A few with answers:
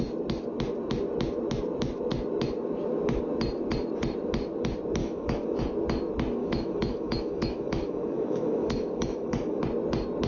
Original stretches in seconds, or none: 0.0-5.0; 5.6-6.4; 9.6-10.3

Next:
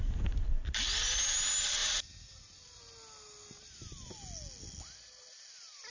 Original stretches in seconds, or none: 0.0-1.8; 2.8-5.9

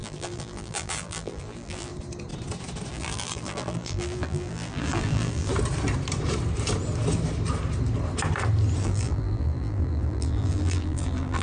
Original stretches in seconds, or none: 1.9-2.9; 5.5-8.8

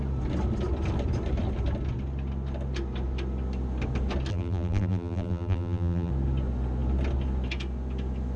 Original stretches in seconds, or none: 0.0-4.3; 6.1-8.4

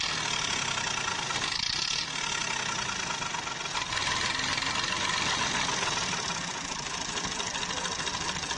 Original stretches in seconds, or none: 0.0-8.6